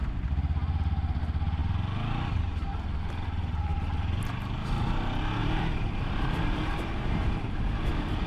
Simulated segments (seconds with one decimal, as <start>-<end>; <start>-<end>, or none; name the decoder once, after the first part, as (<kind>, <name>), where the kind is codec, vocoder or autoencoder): 5.4-7.9 (vocoder, BigVGAN v2)

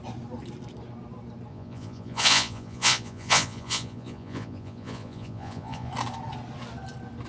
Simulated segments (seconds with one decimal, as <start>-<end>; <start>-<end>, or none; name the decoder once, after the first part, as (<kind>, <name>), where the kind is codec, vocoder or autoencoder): 1.5-5.9 (vocoder, Vocos)

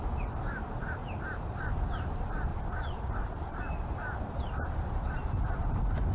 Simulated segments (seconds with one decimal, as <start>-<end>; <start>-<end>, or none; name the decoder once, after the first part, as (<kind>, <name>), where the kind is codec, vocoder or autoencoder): 1.0-1.6 (vocoder, BigVGAN v2); 2.5-4.5

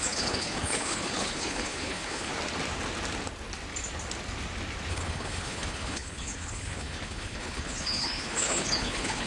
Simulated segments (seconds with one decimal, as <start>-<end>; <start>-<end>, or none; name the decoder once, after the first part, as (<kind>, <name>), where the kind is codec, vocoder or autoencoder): 0.0-2.3 (codec, HILCodec); 4.9-9.3

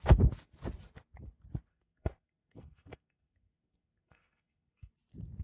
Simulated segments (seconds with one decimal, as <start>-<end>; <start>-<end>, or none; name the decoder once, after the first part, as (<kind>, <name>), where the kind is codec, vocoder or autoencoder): 1.7-4.9 (codec, SNAC)

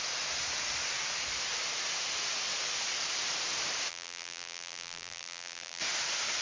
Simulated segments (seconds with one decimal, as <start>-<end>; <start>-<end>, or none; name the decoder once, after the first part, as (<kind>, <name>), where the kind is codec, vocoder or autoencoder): 3.9-5.8 (vocoder, BigVGAN v2)

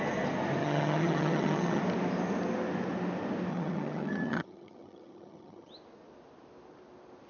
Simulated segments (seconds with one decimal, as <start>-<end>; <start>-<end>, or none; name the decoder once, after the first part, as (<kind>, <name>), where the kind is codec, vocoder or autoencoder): 0.6-1.8 (vocoder, HiFi-GAN); 3.5-5.7